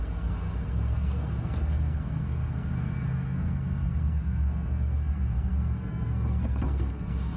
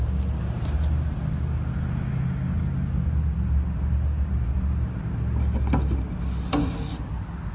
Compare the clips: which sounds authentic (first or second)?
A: second